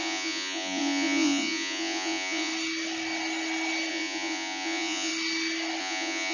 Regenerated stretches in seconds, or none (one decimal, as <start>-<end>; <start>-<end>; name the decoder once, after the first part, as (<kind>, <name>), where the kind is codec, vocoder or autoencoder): 0.0-2.5 (vocoder, Vocos); 3.9-5.1; 5.8-6.3